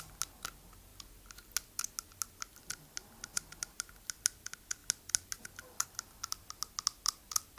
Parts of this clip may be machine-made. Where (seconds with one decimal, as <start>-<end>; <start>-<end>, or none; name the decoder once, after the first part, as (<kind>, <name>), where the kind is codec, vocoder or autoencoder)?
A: none